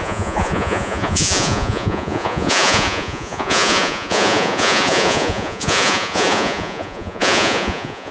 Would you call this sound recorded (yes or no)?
no